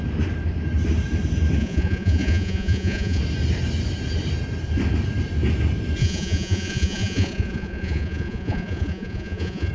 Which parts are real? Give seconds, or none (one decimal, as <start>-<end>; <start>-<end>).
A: 0.0-1.6; 3.2-6.0